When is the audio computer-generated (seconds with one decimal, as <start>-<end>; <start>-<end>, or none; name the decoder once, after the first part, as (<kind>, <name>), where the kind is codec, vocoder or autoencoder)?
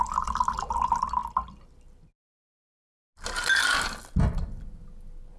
none